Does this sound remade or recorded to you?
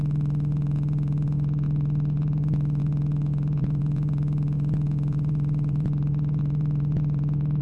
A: remade